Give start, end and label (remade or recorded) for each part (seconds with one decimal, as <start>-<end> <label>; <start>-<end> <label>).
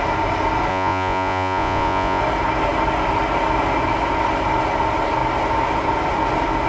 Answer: 0.0-0.7 recorded; 0.7-2.2 remade; 2.2-6.7 recorded